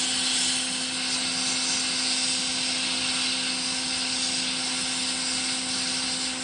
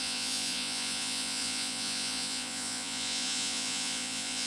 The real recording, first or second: first